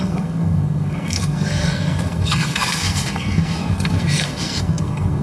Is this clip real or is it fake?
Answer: fake